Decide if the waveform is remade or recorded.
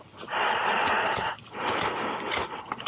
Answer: recorded